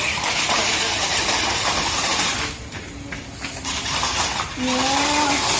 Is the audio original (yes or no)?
yes